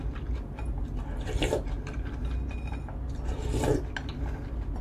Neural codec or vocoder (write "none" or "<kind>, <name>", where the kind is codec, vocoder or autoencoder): none